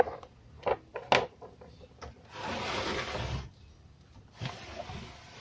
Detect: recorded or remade recorded